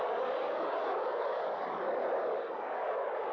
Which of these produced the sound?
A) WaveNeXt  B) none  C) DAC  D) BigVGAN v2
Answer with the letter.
C